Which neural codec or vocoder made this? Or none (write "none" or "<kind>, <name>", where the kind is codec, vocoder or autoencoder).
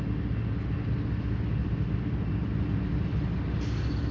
none